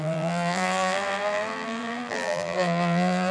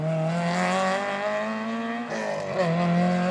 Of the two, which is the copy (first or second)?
first